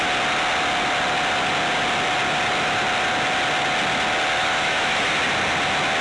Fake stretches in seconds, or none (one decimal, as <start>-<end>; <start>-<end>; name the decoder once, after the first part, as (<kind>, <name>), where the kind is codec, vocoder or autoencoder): 4.4-5.0 (autoencoder, DAC-VAE)